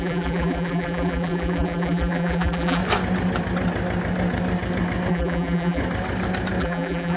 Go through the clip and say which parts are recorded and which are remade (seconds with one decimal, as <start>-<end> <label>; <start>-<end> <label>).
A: 0.0-2.8 remade; 2.8-5.1 recorded; 5.1-5.8 remade; 5.8-6.6 recorded; 6.6-7.2 remade